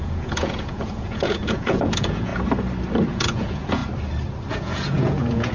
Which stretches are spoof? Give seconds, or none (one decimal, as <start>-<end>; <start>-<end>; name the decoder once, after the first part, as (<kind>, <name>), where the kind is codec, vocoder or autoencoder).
0.0-2.3 (vocoder, Vocos); 3.1-3.8; 4.5-5.5